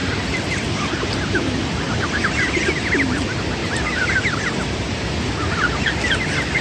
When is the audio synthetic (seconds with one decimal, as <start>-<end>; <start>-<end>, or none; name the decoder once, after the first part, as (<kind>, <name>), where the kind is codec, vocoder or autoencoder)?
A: none